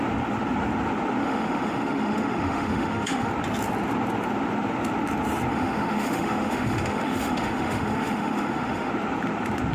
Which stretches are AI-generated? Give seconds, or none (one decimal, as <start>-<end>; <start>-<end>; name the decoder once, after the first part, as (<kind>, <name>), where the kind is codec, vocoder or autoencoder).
1.2-3.3 (autoencoder, DAC-VAE); 5.5-8.9